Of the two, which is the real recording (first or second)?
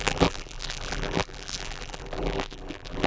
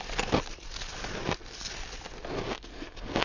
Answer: second